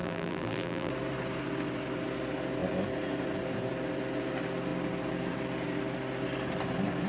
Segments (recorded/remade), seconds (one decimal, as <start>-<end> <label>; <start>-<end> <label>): 0.0-0.9 remade; 0.9-7.1 recorded